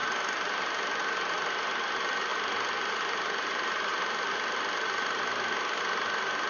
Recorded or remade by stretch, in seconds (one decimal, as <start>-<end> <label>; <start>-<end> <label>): 0.0-6.5 recorded